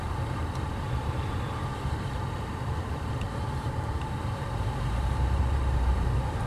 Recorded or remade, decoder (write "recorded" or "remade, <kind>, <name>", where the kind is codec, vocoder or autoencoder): remade, vocoder, BigVGAN v2